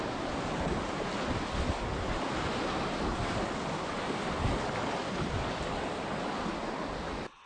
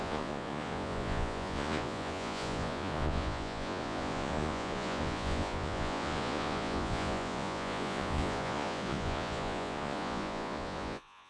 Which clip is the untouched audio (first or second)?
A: first